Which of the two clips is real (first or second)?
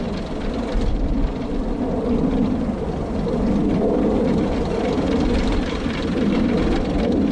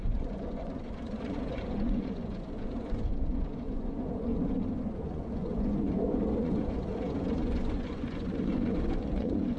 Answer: first